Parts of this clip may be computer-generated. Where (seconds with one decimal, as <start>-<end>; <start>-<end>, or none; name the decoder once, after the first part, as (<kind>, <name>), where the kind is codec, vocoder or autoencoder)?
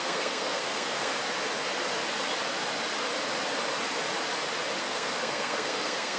0.0-1.1 (codec, SNAC); 4.8-6.2